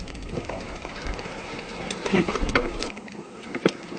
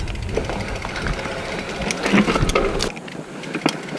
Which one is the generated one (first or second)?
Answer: first